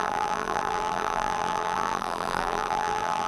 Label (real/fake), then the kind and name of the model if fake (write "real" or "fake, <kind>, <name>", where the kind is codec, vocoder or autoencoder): fake, vocoder, BigVGAN v2